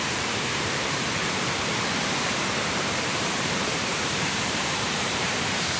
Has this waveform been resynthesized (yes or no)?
yes